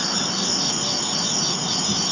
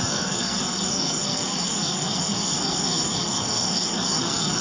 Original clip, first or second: first